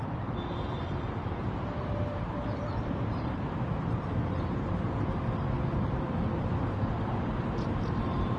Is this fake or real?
fake